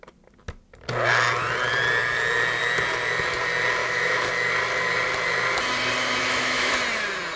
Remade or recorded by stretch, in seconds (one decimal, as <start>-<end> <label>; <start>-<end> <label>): 0.0-3.8 recorded; 3.8-4.3 remade; 4.3-6.2 recorded; 6.2-6.8 remade; 6.8-7.4 recorded